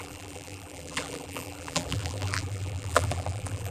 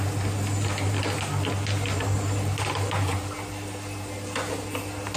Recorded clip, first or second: second